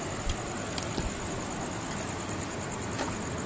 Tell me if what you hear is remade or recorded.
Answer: recorded